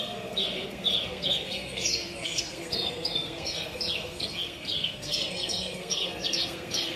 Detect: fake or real fake